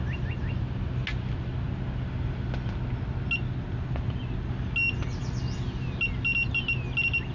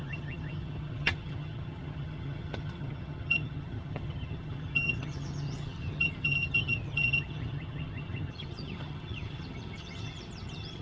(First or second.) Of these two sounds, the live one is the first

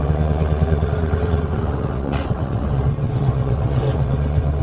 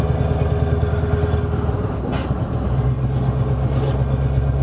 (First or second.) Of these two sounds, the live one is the second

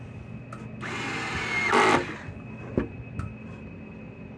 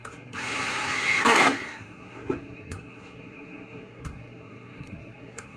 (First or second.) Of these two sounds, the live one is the first